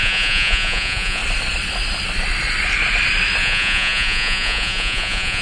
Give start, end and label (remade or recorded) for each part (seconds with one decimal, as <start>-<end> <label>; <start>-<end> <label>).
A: 0.0-1.2 remade; 1.2-3.4 recorded; 3.4-5.4 remade